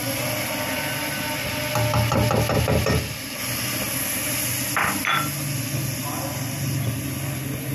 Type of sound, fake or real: real